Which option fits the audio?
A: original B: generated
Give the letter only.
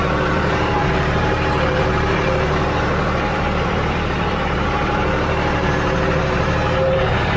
B